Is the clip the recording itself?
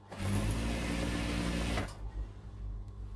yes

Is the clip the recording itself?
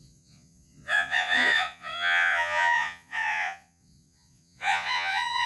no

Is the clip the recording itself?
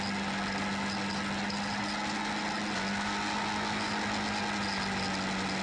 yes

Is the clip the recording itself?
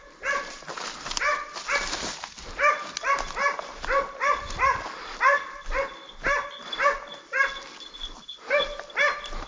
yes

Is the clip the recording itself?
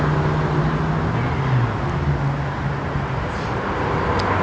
yes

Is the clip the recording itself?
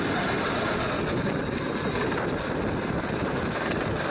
yes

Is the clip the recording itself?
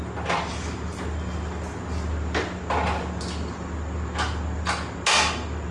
yes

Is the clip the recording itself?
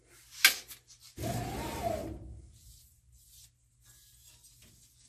yes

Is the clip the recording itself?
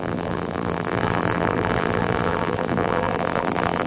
no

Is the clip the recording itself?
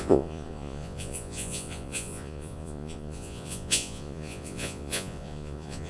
no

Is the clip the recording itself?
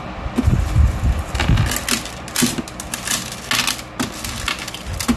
yes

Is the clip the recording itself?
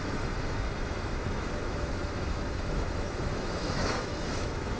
no